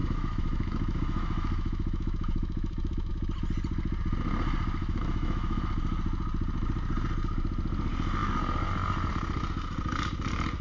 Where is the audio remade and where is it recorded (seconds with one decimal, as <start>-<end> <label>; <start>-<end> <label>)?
0.0-3.1 remade; 3.1-4.8 recorded; 4.8-5.6 remade; 5.6-10.6 recorded